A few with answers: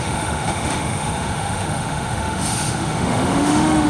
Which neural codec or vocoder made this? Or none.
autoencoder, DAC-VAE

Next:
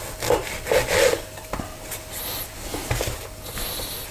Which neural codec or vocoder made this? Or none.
none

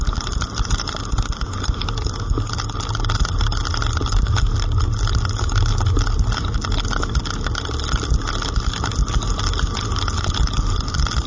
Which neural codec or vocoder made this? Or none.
none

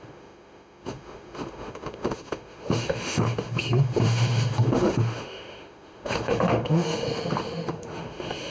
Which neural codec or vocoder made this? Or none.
autoencoder, DAC-VAE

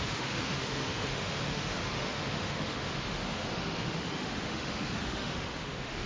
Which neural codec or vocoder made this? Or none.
autoencoder, DAC-VAE